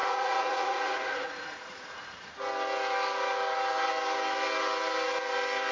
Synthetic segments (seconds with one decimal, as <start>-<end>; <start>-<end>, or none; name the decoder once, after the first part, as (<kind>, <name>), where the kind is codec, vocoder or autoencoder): 0.0-2.3 (vocoder, Vocos)